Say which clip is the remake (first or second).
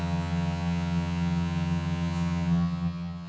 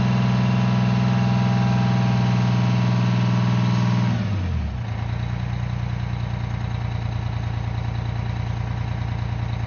first